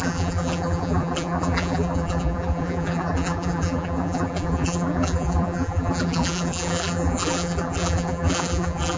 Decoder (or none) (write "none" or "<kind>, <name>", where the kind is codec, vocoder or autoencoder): vocoder, BigVGAN v2